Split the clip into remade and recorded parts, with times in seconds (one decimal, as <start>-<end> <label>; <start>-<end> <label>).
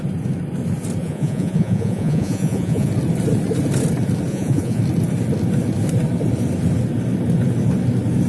0.0-1.0 recorded; 1.0-2.9 remade; 2.9-4.3 recorded; 4.3-4.8 remade; 4.8-8.3 recorded